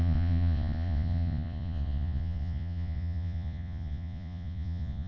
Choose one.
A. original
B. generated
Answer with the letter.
B